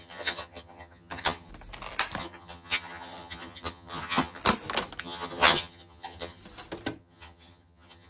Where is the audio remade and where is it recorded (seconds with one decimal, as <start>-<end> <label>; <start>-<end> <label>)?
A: 0.0-1.5 remade; 1.5-2.2 recorded; 2.2-4.4 remade; 4.4-5.0 recorded; 5.0-6.4 remade; 6.4-7.0 recorded; 7.0-8.1 remade